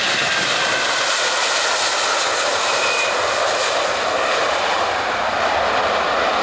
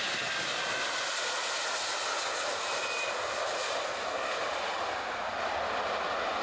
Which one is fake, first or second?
first